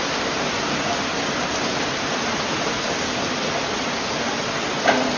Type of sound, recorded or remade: recorded